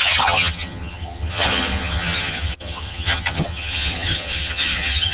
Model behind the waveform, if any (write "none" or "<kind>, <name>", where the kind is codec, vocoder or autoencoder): vocoder, HiFi-GAN